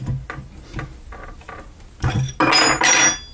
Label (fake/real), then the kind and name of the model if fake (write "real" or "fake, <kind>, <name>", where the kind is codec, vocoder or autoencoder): real